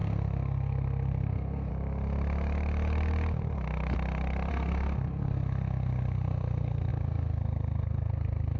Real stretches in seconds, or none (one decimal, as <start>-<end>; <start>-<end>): 1.7-4.5